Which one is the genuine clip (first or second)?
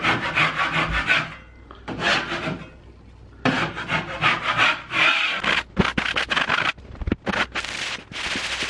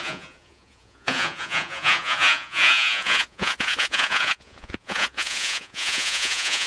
first